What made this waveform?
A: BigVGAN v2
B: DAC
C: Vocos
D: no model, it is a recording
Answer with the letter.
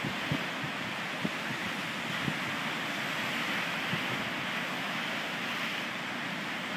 D